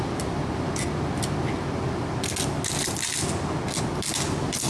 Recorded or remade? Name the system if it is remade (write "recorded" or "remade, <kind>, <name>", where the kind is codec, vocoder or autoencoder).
recorded